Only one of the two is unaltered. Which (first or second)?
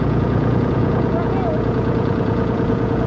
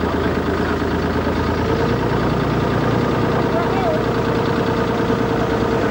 second